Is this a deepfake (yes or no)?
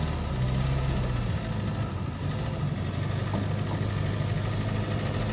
no